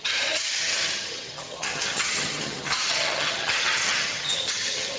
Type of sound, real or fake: fake